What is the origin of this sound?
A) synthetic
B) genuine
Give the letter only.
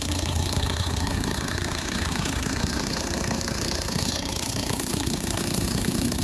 A